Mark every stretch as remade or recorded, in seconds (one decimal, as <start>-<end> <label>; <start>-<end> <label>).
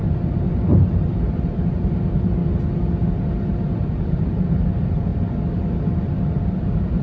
0.0-2.4 remade; 2.4-3.0 recorded; 3.0-5.1 remade; 5.1-6.6 recorded; 6.6-7.0 remade